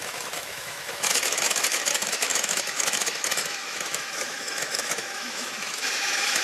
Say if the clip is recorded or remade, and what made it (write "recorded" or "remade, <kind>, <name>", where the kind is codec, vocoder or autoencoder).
remade, autoencoder, DAC-VAE